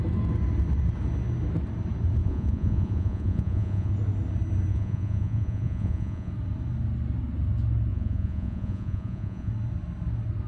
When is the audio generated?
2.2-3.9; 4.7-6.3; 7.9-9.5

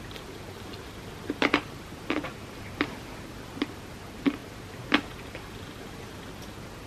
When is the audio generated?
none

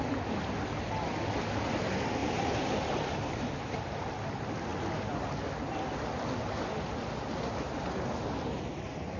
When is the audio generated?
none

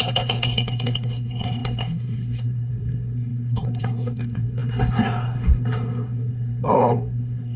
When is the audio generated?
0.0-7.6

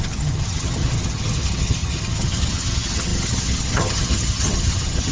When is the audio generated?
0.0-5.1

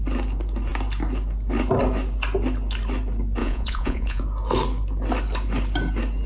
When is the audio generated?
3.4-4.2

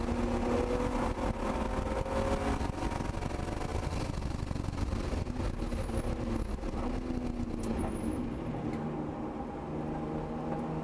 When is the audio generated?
none